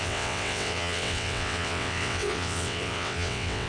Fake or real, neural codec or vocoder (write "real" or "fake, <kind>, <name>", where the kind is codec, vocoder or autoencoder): fake, vocoder, WaveNeXt